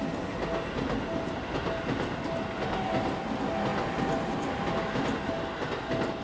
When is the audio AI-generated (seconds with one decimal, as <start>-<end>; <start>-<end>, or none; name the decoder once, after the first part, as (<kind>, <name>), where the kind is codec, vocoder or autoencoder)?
none